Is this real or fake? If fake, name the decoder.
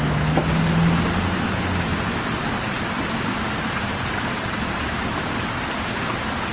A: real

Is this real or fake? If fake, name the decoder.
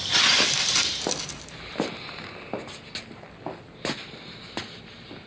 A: real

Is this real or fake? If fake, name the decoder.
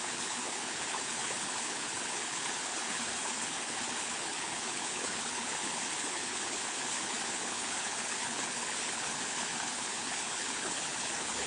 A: fake, codec, HILCodec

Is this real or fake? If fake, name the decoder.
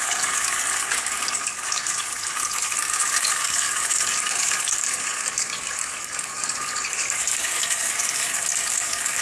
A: fake, codec, DAC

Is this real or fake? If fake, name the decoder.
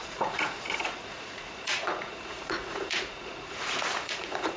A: fake, vocoder, Vocos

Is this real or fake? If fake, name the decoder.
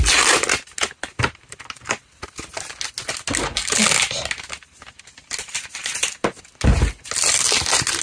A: real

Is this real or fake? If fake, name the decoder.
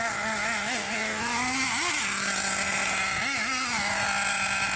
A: real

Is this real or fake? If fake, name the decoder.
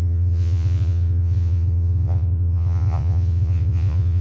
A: fake, vocoder, Vocos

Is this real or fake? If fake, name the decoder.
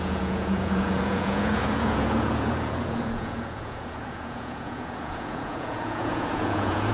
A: fake, vocoder, Vocos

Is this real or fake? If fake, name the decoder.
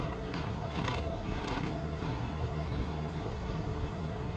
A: fake, codec, SNAC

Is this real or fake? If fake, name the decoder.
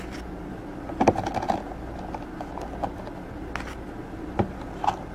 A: real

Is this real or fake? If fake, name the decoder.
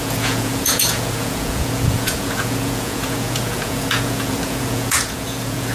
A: fake, vocoder, Vocos